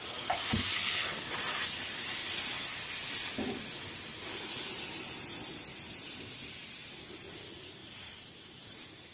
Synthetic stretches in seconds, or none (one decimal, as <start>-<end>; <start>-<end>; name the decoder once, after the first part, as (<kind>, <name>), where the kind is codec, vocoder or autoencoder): 0.7-1.3 (codec, HILCodec)